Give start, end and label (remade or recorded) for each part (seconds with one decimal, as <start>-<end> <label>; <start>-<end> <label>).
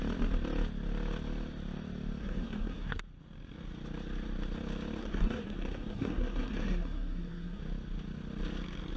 0.0-2.2 recorded; 2.2-3.0 remade; 3.0-5.0 recorded; 5.0-7.6 remade; 7.6-9.0 recorded